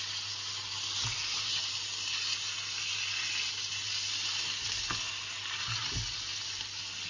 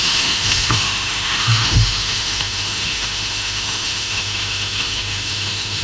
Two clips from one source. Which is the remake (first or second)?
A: second